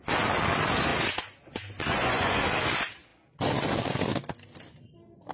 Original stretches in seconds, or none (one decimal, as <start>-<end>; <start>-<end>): 0.0-1.8; 2.4-5.3